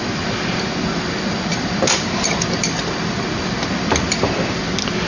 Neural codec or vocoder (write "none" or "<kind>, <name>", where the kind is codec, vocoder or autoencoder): none